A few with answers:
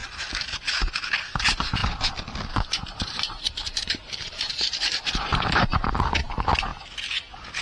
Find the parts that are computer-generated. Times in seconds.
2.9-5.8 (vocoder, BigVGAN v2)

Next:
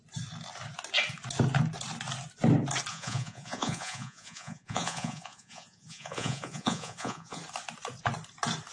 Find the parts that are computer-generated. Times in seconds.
2.9-7.4 (vocoder, Vocos)